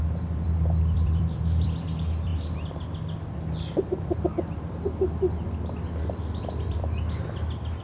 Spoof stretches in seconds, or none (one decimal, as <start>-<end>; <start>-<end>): 0.0-2.3; 6.5-7.8